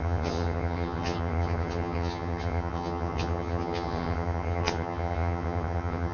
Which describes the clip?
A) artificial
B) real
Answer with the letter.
A